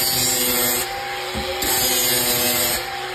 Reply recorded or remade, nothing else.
recorded